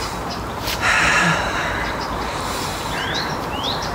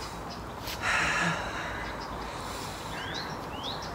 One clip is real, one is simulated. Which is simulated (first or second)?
first